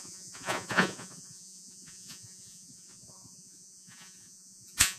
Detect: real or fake fake